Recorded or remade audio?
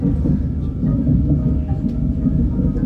recorded